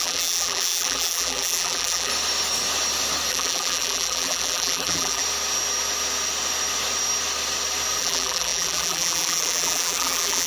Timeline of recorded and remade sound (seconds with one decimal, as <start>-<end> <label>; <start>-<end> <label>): 0.0-2.1 remade; 2.1-3.3 recorded; 3.3-5.2 remade; 5.2-8.0 recorded; 8.0-10.5 remade